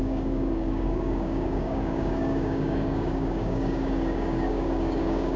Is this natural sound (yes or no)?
no